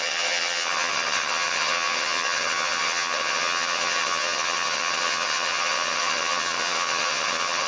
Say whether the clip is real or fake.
fake